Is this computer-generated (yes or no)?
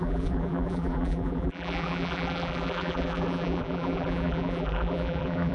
yes